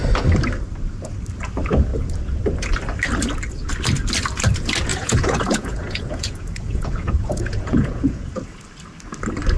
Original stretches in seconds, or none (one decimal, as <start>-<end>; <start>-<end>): 0.0-4.9; 8.6-9.6